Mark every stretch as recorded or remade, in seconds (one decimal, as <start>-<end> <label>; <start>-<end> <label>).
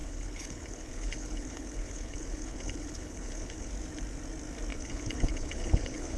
0.0-3.7 remade; 3.7-4.7 recorded; 4.7-6.2 remade